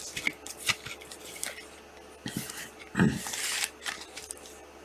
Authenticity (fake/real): real